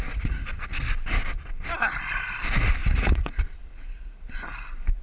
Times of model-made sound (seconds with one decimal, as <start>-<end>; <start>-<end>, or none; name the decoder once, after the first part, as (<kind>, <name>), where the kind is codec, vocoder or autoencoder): 2.8-3.7 (vocoder, Vocos)